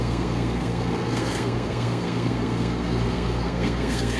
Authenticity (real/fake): fake